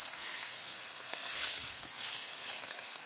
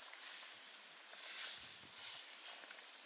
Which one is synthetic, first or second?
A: first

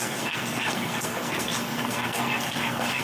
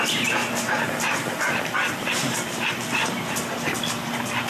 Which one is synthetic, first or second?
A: first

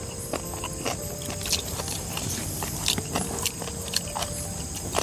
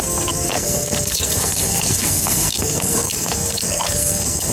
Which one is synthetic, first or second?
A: second